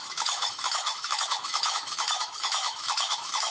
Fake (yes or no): yes